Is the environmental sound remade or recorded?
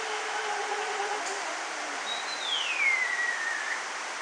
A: recorded